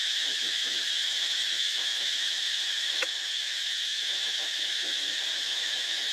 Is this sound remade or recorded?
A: remade